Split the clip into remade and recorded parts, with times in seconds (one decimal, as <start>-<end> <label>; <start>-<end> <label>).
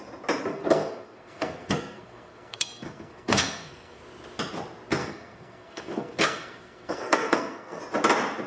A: 0.0-0.5 recorded; 0.5-4.0 remade; 4.0-5.0 recorded; 5.0-7.8 remade; 7.8-8.5 recorded